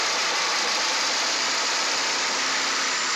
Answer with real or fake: fake